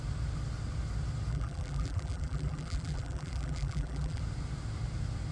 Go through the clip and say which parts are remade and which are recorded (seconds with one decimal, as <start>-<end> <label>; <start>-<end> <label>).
0.0-1.3 recorded; 1.3-4.2 remade; 4.2-5.3 recorded